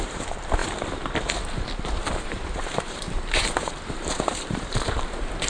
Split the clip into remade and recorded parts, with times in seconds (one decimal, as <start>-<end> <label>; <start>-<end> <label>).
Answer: 0.0-0.6 remade; 0.6-1.5 recorded; 1.5-5.5 remade